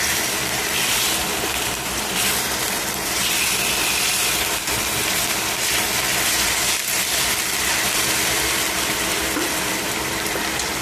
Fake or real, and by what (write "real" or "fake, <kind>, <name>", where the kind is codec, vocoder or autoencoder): fake, vocoder, BigVGAN v2